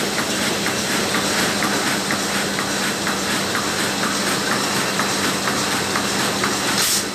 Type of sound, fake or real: real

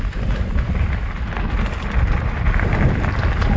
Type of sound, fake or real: real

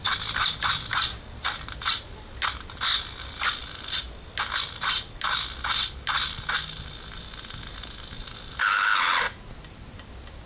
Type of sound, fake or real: real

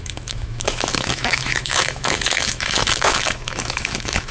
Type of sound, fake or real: fake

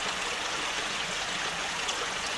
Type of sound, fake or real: fake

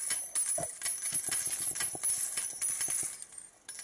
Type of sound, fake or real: real